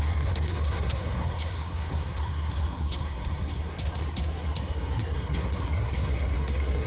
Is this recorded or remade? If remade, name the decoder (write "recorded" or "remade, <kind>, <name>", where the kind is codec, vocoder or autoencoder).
remade, codec, SNAC